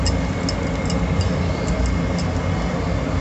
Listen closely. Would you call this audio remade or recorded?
recorded